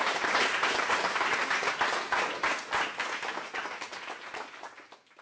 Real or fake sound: real